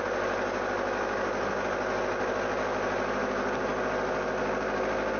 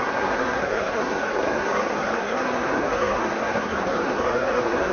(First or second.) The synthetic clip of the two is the second